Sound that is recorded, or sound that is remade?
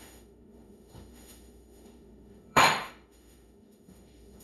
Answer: remade